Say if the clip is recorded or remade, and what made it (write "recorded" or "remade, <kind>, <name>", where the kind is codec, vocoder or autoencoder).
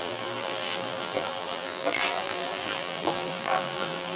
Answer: remade, vocoder, BigVGAN v2